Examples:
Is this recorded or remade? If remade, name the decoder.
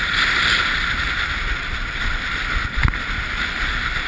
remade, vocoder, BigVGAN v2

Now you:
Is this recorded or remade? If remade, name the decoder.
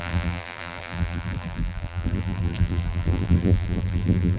remade, vocoder, BigVGAN v2